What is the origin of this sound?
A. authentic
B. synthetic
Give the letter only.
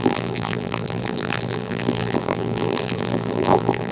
B